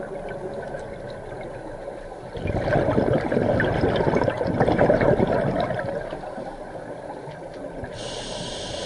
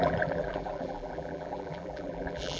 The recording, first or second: first